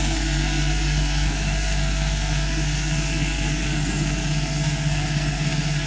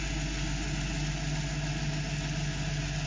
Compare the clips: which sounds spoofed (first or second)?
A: first